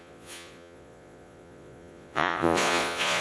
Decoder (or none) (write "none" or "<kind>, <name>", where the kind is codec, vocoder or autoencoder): vocoder, Vocos